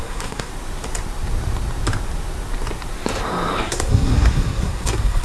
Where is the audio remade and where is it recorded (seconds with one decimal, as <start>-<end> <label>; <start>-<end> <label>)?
0.0-0.5 remade; 0.5-3.6 recorded; 3.6-5.2 remade